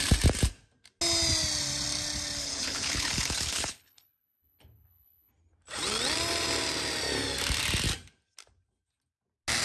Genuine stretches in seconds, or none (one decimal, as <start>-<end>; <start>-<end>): 0.0-2.4; 5.3-9.6